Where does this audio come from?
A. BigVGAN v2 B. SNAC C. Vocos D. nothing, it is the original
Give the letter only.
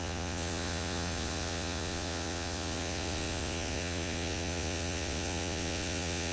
C